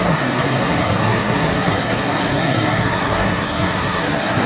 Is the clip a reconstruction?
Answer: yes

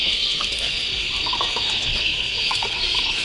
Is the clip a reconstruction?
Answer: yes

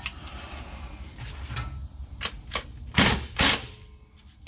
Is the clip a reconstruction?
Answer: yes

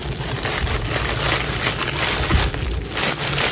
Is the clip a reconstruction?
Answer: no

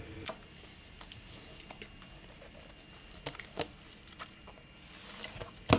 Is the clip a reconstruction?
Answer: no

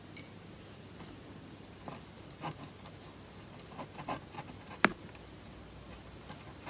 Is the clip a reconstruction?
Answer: no